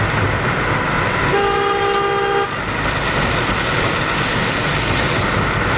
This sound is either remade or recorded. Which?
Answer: recorded